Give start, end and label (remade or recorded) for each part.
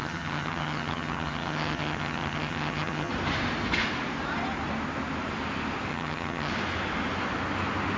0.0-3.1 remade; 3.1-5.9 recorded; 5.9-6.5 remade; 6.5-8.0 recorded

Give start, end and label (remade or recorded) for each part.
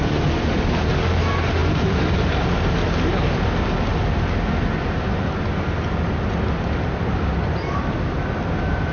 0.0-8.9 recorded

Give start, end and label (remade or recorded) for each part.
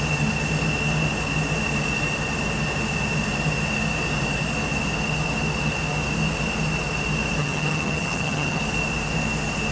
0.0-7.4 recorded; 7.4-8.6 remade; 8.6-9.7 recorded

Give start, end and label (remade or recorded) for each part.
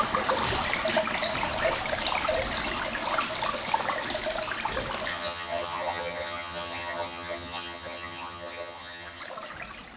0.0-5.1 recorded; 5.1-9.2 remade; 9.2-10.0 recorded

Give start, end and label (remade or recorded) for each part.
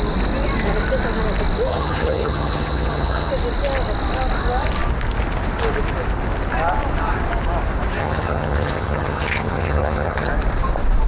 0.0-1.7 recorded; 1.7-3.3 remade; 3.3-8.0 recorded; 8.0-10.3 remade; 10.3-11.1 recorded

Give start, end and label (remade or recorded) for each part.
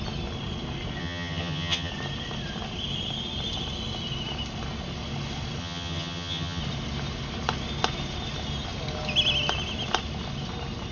0.0-1.0 recorded; 1.0-1.9 remade; 1.9-5.6 recorded; 5.6-6.6 remade; 6.6-10.9 recorded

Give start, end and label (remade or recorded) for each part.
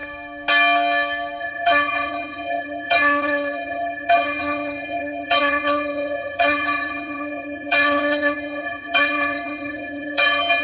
0.0-1.4 recorded; 1.4-10.6 remade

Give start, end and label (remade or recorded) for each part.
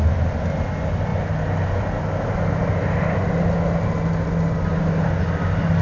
0.0-5.8 recorded